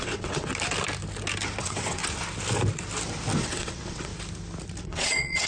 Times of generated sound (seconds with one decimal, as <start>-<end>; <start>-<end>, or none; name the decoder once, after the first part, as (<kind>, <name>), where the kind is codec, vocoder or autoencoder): 0.0-0.5 (vocoder, WaveNeXt); 1.6-2.0; 3.4-4.1; 4.8-5.5